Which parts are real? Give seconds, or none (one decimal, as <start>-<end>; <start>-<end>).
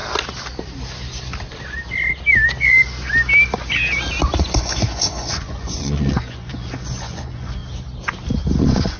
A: 0.0-4.4; 7.6-8.6